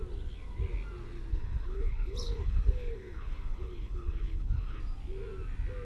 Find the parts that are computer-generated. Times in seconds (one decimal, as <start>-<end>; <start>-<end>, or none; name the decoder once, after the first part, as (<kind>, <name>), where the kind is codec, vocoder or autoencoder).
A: 1.3-4.8 (codec, HILCodec)